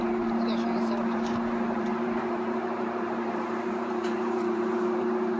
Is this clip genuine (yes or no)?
no